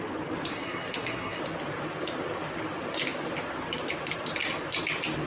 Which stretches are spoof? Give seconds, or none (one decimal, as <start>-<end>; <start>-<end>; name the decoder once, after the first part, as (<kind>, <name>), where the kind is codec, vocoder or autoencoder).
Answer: 0.5-1.4 (codec, SNAC)